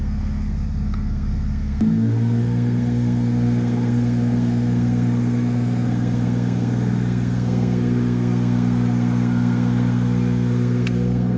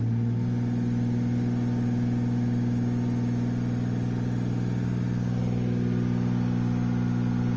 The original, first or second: second